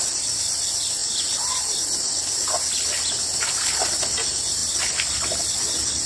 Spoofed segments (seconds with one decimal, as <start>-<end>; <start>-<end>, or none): none